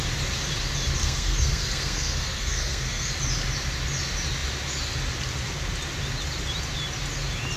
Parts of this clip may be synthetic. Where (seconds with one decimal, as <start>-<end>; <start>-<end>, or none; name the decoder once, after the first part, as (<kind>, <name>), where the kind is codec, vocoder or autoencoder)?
1.0-3.1 (codec, SNAC)